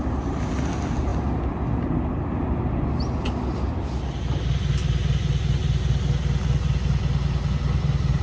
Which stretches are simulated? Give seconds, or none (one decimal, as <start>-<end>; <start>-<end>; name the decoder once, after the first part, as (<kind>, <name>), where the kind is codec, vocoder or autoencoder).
none